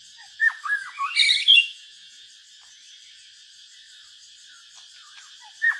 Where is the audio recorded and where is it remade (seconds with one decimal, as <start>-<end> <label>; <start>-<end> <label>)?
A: 0.0-1.5 recorded; 1.5-2.3 remade; 2.3-5.8 recorded